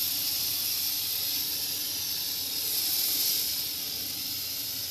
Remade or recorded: recorded